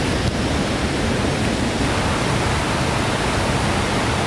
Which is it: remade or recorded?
recorded